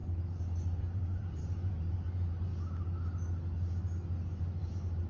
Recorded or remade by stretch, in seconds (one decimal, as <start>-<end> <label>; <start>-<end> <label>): 0.0-0.8 recorded; 0.8-2.5 remade; 2.5-4.4 recorded; 4.4-5.1 remade